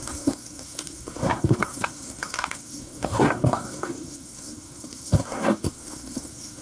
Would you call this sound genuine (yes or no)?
no